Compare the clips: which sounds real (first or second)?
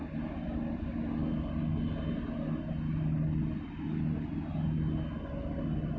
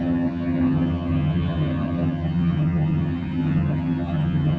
first